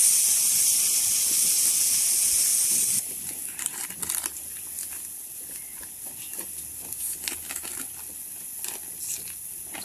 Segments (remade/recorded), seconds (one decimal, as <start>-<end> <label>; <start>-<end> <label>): 0.0-2.5 recorded; 2.5-3.9 remade; 3.9-4.8 recorded; 4.8-5.9 remade; 5.9-9.8 recorded